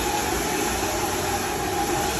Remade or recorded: recorded